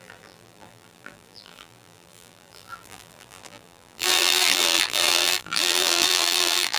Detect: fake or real fake